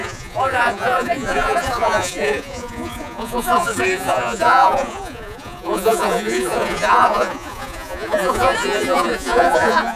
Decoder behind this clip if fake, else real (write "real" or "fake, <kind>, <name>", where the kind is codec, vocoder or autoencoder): fake, vocoder, Vocos